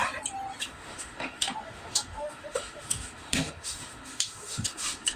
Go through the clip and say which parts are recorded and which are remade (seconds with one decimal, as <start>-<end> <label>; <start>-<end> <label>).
0.0-0.6 recorded; 0.6-5.2 remade